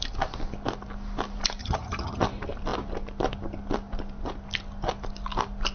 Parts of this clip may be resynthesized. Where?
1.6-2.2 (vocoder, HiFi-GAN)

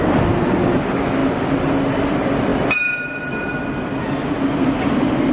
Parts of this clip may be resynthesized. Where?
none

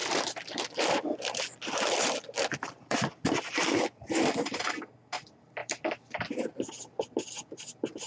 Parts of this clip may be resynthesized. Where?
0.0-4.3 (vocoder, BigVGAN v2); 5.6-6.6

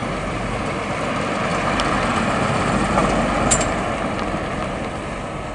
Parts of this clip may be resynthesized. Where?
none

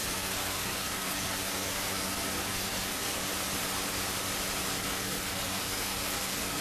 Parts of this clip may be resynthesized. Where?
0.0-3.3 (codec, SNAC); 4.7-6.6

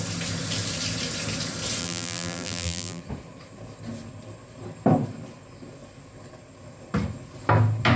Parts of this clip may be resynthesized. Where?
1.8-3.0 (vocoder, BigVGAN v2)